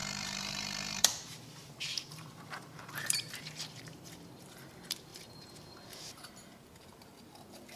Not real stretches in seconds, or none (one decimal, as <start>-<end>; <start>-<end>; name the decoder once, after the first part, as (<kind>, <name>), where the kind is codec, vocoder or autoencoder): 0.0-7.8 (vocoder, BigVGAN v2)